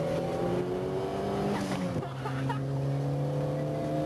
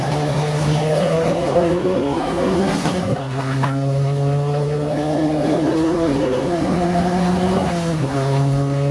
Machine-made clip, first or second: second